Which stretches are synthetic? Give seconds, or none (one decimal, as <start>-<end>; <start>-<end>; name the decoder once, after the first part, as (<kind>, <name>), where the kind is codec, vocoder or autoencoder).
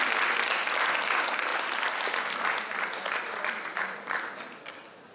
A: none